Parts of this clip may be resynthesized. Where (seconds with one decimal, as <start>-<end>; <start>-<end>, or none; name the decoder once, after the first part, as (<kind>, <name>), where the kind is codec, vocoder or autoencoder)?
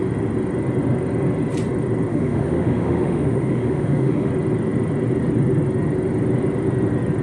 2.1-4.3 (autoencoder, DAC-VAE)